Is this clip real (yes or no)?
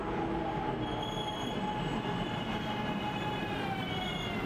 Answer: yes